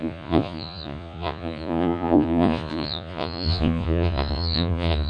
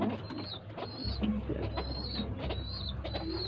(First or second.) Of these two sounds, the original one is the second